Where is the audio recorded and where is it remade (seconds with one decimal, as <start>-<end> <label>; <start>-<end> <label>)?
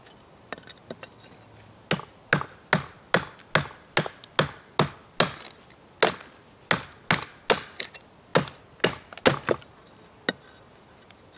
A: 0.0-11.4 recorded